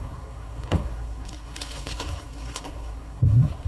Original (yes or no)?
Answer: no